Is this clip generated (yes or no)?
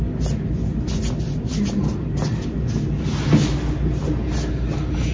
no